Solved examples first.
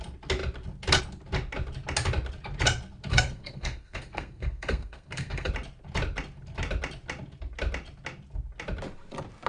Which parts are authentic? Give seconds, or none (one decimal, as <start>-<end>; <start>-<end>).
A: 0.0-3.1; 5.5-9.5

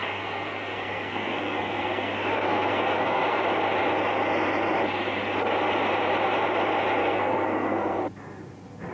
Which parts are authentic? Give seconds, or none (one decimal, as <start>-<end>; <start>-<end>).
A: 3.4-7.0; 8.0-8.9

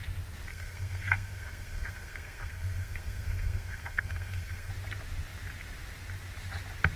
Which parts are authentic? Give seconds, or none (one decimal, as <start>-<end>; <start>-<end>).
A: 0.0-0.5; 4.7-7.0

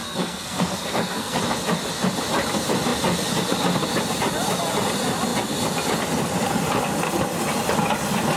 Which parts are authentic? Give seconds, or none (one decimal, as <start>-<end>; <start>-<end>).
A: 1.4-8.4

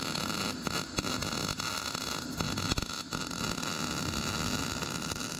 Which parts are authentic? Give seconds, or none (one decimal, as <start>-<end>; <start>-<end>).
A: 0.0-5.4

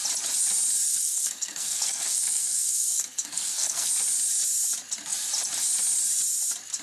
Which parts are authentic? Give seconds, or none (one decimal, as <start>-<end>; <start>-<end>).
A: 0.0-0.9; 3.9-6.8

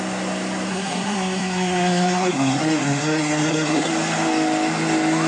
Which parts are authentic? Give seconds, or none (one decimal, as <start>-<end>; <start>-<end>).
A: 0.0-0.7; 3.9-5.3